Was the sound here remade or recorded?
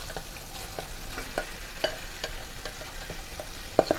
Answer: recorded